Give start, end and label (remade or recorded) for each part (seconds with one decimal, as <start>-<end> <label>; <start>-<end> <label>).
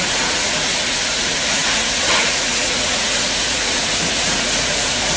0.0-5.2 remade